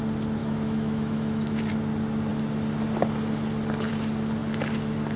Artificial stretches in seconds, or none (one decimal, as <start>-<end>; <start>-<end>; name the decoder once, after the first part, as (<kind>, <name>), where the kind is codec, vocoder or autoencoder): 0.4-1.7 (autoencoder, DAC-VAE)